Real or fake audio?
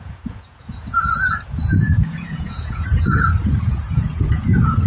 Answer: fake